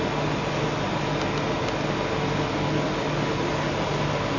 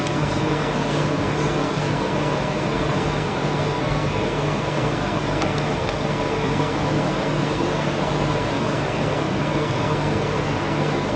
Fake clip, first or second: second